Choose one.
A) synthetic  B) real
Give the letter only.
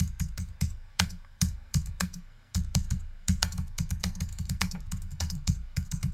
A